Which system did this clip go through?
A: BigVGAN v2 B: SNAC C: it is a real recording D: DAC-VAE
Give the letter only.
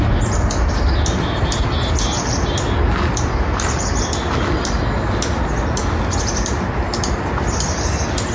C